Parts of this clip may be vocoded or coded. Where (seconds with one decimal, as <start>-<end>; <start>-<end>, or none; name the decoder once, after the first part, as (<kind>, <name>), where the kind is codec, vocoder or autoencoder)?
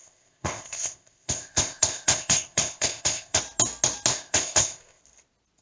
0.0-3.4 (codec, ZipCodec); 4.1-5.0